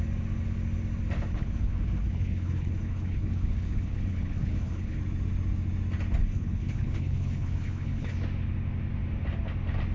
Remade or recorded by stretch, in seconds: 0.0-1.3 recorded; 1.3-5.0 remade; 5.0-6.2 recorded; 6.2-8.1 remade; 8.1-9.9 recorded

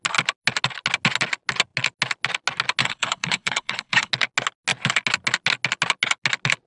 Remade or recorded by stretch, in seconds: 0.0-2.8 recorded; 2.8-4.1 remade; 4.1-6.7 recorded